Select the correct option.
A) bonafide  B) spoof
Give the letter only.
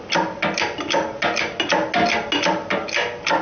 A